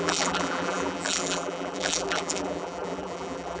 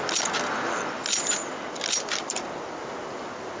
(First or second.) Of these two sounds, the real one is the second